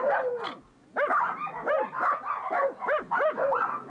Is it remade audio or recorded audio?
recorded